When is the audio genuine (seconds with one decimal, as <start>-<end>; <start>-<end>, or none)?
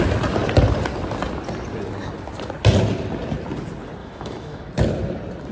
0.0-4.0; 4.7-5.5